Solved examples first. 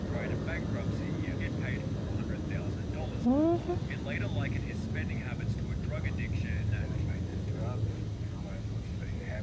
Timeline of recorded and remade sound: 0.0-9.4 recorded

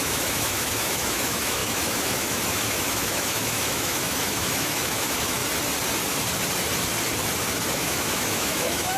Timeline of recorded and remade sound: 0.0-5.4 remade; 5.4-7.7 recorded; 7.7-9.0 remade

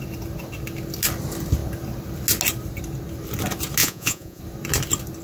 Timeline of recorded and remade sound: 0.0-3.8 recorded; 3.8-4.4 remade; 4.4-5.2 recorded

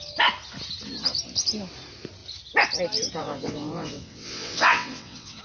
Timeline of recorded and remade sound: 0.0-3.2 recorded; 3.2-5.4 remade

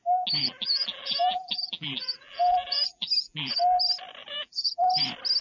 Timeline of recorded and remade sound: 0.0-0.4 recorded; 0.4-3.5 remade; 3.5-4.2 recorded; 4.2-4.9 remade; 4.9-5.4 recorded

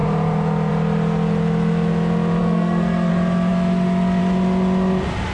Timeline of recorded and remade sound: 0.0-2.4 recorded; 2.4-3.1 remade; 3.1-5.3 recorded

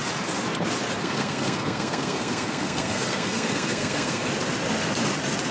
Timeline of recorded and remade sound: 0.0-1.0 recorded; 1.0-4.3 remade; 4.3-5.5 recorded

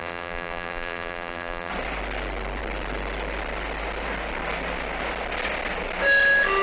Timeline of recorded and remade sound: 0.0-1.7 remade; 1.7-6.6 recorded